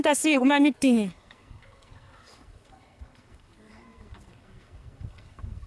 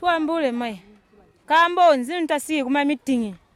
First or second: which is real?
second